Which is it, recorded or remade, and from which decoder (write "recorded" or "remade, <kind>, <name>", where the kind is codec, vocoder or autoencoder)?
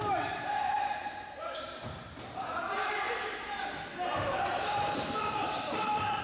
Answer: remade, vocoder, BigVGAN v2